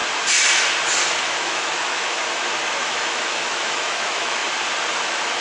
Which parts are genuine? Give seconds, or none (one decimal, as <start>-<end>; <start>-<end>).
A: 0.0-1.1; 2.2-2.8; 4.4-4.9